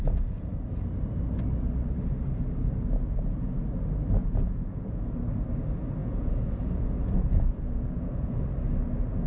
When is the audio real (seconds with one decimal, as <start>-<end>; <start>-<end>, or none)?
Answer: 0.5-4.2; 5.0-6.0; 8.4-9.3